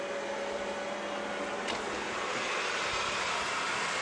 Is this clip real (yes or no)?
yes